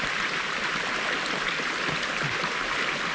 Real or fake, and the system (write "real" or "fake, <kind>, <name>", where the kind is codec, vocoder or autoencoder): real